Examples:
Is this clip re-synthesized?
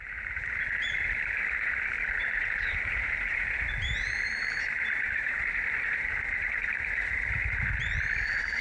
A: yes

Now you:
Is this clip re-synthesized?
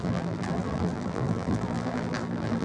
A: yes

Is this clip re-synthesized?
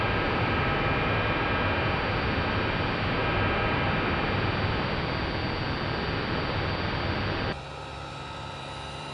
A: yes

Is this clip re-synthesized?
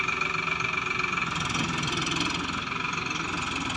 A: no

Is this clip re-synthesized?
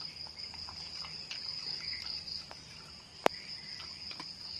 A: yes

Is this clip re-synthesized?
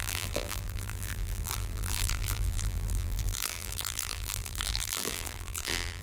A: yes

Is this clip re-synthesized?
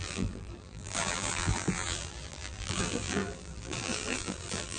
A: yes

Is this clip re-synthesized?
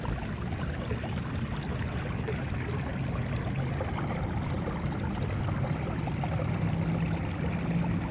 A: no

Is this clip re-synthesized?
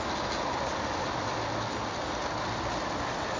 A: no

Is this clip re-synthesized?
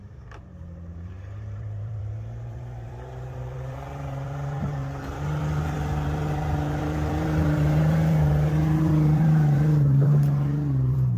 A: yes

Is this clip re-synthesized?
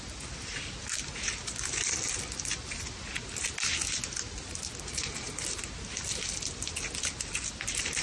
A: no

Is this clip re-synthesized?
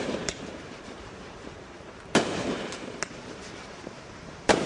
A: yes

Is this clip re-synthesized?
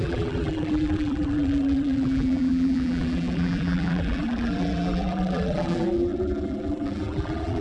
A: yes